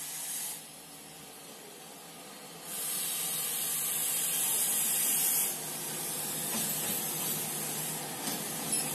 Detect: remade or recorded recorded